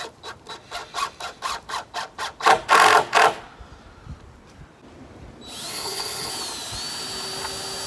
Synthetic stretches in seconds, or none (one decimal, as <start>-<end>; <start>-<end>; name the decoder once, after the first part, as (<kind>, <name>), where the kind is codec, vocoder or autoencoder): 5.7-6.3 (codec, HILCodec)